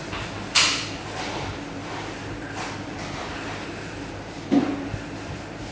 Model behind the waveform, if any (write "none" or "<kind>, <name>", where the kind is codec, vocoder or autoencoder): none